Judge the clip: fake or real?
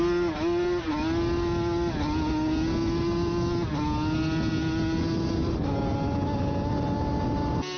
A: real